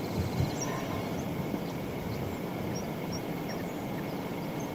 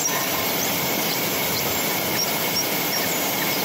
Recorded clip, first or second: first